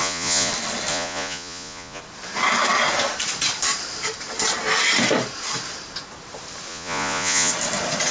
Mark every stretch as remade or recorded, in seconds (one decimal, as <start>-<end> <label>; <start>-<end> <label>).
0.0-0.5 remade; 0.5-0.9 recorded; 0.9-2.0 remade; 2.0-6.7 recorded; 6.7-7.5 remade; 7.5-8.1 recorded